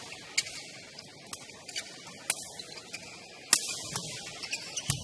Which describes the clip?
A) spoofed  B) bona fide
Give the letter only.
B